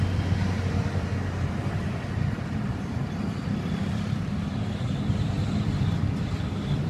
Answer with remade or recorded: remade